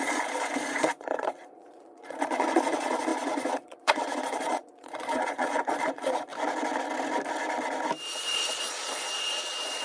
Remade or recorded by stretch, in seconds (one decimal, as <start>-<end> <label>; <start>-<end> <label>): 0.0-6.3 remade; 6.3-8.3 recorded; 8.3-9.8 remade